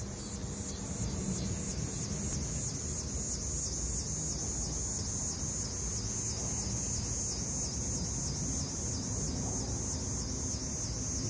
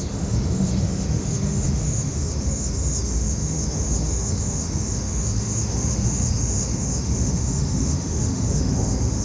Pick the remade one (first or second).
second